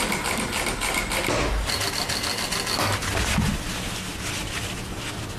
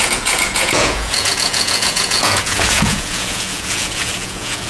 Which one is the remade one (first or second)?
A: second